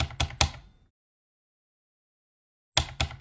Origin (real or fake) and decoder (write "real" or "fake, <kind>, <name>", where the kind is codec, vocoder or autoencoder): real